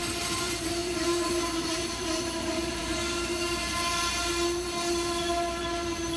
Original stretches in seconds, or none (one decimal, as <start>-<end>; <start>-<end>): none